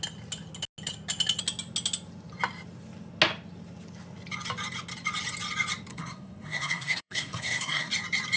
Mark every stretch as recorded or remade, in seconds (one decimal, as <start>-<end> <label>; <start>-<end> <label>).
0.0-5.9 recorded; 5.9-7.9 remade; 7.9-8.4 recorded